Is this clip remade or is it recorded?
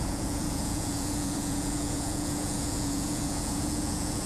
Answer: remade